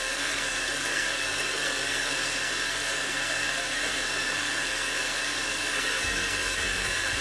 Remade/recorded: remade